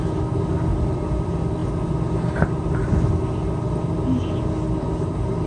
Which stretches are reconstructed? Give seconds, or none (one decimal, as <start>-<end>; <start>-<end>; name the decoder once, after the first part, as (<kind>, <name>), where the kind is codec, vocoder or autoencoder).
none